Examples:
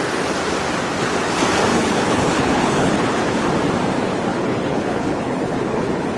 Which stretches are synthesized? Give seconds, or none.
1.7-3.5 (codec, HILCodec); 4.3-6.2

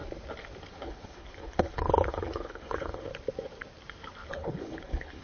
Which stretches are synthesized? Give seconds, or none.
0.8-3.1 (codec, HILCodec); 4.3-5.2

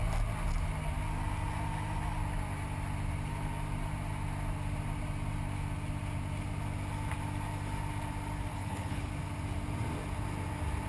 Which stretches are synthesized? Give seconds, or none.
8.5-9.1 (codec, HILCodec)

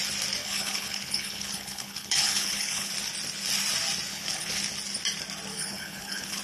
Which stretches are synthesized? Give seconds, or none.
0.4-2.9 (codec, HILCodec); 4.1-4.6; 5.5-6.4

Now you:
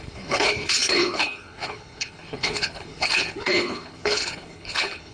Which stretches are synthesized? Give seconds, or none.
0.0-5.1 (codec, HILCodec)

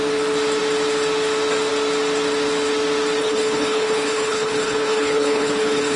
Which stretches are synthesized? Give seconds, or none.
3.2-6.0 (codec, HILCodec)

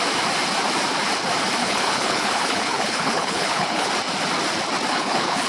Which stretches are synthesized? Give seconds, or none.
1.6-3.9 (codec, HILCodec); 4.9-5.5

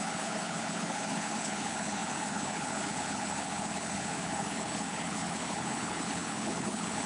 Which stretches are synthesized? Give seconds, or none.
0.0-7.1 (codec, HILCodec)